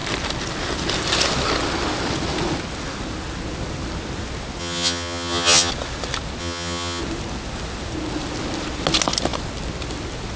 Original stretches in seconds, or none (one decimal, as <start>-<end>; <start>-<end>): 0.0-4.6; 5.7-6.4; 7.0-10.4